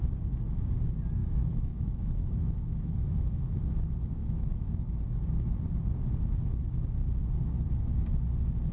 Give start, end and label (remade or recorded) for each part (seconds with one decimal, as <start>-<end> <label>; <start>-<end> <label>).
0.0-1.2 recorded; 1.2-3.5 remade; 3.5-4.2 recorded; 4.2-5.0 remade; 5.0-8.7 recorded